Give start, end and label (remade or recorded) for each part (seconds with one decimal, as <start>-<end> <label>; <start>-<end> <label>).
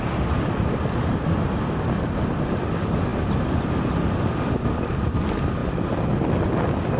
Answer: 0.0-7.0 recorded